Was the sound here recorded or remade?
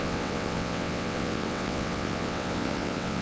remade